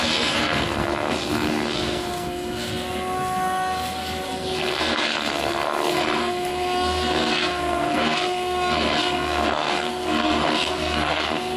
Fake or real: fake